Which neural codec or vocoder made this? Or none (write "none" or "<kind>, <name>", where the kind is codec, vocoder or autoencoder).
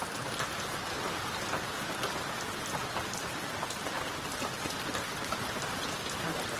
none